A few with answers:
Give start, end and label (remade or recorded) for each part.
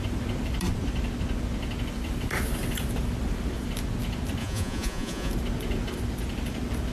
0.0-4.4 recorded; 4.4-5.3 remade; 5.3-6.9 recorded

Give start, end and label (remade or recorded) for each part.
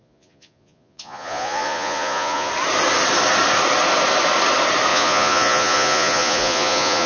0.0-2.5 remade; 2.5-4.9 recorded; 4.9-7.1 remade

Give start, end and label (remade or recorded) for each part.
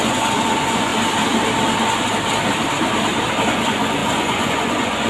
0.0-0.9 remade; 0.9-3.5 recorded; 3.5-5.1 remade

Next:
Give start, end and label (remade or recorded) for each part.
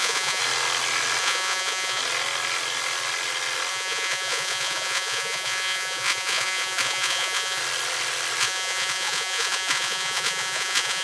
0.0-0.4 remade; 0.4-1.2 recorded; 1.2-2.0 remade; 2.0-3.7 recorded; 3.7-7.6 remade; 7.6-8.4 recorded; 8.4-11.0 remade